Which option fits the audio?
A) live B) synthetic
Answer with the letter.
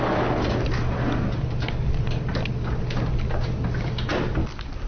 A